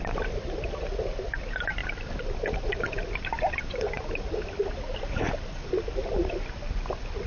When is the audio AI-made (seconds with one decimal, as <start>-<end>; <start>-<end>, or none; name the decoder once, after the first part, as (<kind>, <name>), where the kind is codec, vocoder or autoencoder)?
1.8-4.2 (vocoder, BigVGAN v2)